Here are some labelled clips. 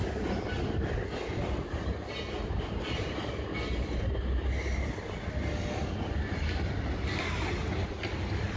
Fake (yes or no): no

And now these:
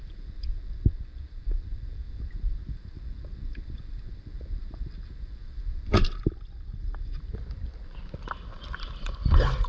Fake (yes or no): yes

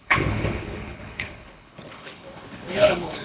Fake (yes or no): yes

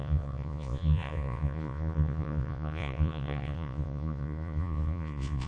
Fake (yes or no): yes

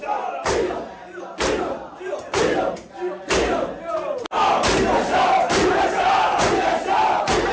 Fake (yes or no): no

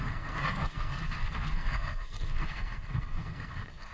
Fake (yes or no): yes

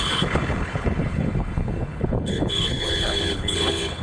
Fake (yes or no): yes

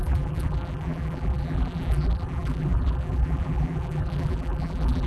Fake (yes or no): yes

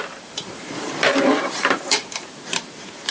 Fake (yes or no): yes